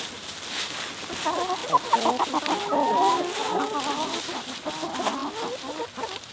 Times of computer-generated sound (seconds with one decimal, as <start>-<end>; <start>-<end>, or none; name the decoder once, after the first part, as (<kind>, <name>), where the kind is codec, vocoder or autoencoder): none